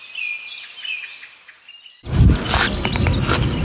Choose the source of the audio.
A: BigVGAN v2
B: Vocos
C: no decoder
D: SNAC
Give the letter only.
C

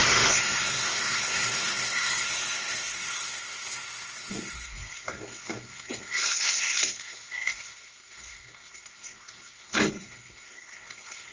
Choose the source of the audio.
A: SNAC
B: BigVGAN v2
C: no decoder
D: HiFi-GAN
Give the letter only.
A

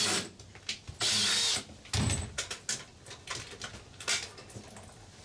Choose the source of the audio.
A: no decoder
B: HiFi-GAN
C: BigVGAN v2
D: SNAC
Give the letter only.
A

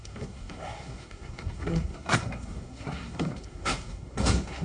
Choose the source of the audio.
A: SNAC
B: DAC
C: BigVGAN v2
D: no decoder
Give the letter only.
A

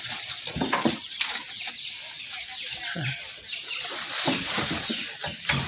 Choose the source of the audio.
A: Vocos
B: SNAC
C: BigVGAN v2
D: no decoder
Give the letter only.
D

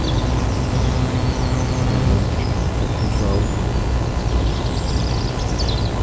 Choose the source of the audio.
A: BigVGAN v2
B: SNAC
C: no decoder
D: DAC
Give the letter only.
C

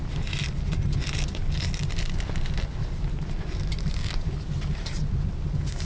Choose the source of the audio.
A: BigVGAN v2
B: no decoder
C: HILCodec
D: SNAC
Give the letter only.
B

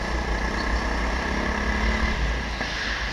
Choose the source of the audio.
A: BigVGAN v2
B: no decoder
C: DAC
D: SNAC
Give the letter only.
B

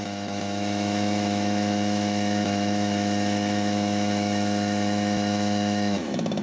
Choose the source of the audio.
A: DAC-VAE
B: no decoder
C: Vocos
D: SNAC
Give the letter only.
A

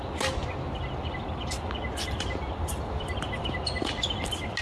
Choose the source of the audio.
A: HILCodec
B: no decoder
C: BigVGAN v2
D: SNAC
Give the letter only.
B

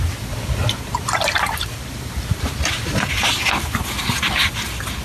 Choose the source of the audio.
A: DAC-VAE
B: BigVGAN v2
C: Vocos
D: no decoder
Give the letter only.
D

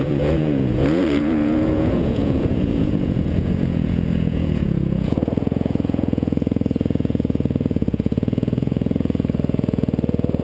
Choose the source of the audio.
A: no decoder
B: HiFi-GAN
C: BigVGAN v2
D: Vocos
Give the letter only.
D